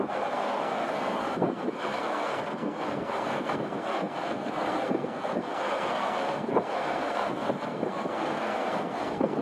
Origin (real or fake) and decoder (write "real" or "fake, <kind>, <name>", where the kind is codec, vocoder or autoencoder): fake, codec, SNAC